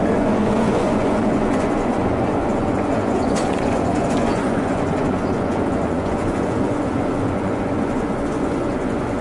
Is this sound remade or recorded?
remade